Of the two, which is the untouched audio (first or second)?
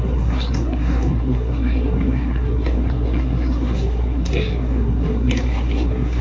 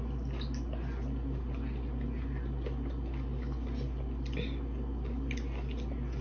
second